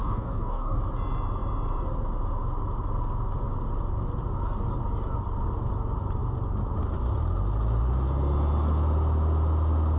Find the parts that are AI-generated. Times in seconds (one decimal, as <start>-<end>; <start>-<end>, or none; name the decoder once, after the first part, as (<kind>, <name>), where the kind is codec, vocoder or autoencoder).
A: 0.0-0.8 (codec, DAC)